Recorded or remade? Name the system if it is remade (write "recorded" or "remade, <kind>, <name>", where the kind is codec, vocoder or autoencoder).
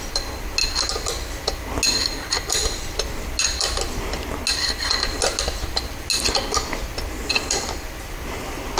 recorded